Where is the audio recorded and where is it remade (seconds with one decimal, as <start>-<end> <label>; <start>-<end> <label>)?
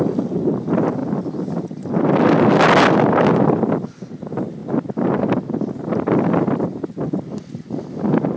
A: 0.0-8.4 recorded